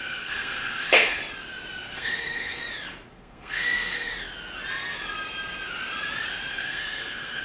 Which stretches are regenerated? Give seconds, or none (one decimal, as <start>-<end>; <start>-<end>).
0.0-1.2; 1.8-2.6; 3.1-4.1; 6.5-7.4